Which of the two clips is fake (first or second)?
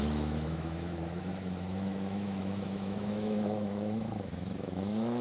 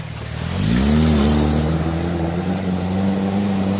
first